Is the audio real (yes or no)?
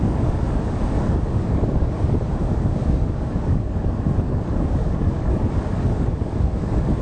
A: no